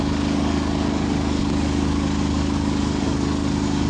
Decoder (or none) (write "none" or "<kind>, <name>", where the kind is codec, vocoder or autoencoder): codec, DAC